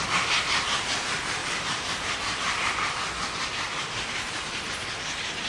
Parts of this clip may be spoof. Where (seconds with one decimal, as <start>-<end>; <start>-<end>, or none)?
1.4-4.7